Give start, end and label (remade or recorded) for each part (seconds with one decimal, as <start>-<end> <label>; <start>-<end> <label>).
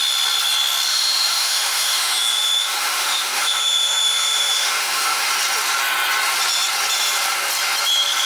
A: 0.0-0.9 recorded; 0.9-5.3 remade; 5.3-8.3 recorded